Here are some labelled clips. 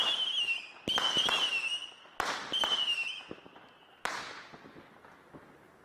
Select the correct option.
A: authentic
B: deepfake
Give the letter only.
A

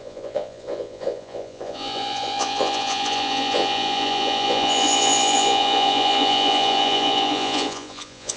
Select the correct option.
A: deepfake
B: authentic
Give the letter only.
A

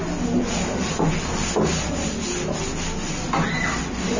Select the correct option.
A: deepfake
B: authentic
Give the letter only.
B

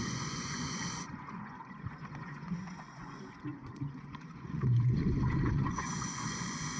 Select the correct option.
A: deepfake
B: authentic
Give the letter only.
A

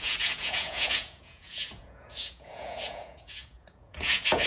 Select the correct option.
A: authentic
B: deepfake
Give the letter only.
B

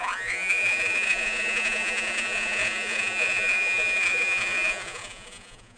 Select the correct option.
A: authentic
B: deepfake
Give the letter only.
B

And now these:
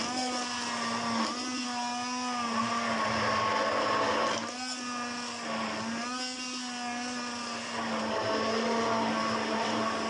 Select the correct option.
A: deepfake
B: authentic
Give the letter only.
B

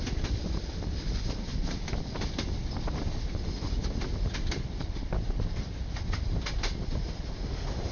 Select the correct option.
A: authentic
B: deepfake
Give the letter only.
A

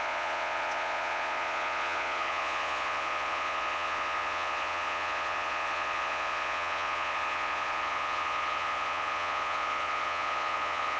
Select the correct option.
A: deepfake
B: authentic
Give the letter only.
A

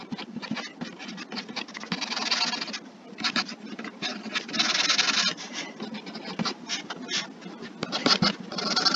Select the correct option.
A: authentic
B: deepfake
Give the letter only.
A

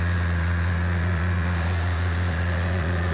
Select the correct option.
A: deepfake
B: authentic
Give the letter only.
A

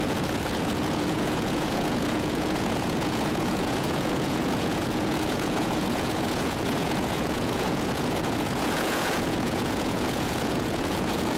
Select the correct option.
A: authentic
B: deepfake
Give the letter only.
B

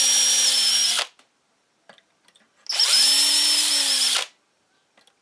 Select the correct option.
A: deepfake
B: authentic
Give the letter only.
B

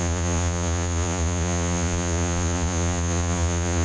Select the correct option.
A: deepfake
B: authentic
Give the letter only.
A